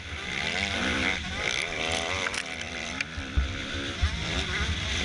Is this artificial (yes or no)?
yes